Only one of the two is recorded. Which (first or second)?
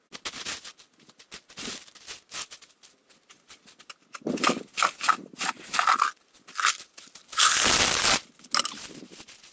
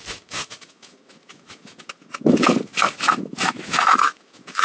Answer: first